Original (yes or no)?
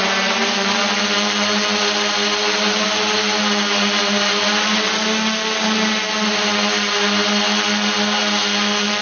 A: yes